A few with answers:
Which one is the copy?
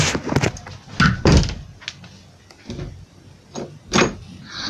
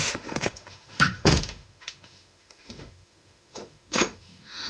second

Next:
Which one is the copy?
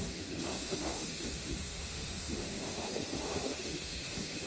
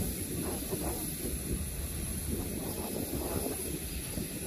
first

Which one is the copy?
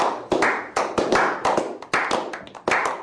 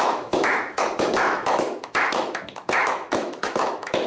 second